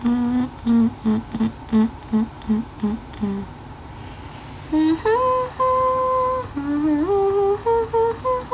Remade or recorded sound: recorded